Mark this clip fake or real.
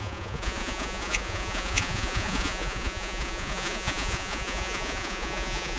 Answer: fake